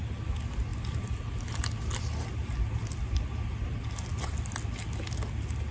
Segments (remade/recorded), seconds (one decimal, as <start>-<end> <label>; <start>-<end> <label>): 0.0-5.7 recorded